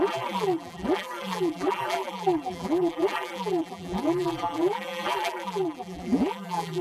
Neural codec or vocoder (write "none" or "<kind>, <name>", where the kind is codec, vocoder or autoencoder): vocoder, BigVGAN v2